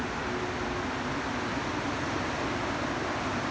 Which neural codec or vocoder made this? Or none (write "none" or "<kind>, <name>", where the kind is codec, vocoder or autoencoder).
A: none